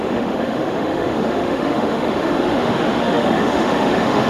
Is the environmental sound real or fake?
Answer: fake